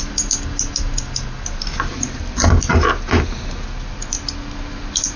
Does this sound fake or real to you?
real